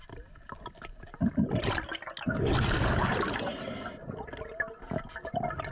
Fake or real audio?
real